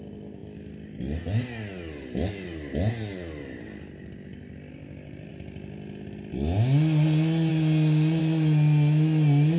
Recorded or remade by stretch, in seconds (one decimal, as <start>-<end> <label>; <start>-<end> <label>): 0.0-9.6 recorded